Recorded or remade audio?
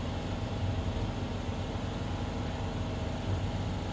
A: recorded